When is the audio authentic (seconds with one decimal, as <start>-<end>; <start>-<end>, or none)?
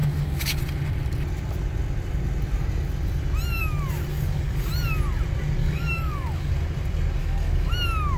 0.6-4.1; 4.7-5.6; 6.5-7.2; 7.7-8.2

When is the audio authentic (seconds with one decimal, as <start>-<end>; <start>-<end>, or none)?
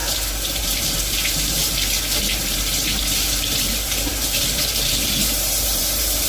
0.0-0.6; 1.6-2.2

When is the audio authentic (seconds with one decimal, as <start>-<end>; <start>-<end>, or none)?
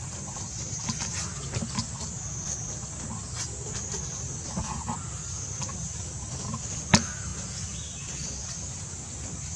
0.0-9.6